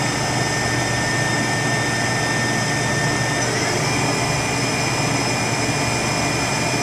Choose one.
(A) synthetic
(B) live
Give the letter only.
B